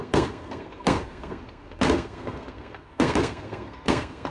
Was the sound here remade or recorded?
remade